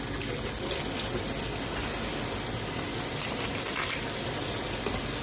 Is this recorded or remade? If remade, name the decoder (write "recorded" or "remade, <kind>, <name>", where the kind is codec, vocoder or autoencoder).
recorded